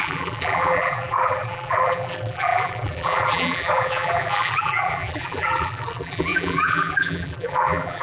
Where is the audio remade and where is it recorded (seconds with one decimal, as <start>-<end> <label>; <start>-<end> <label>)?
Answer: 0.0-8.0 remade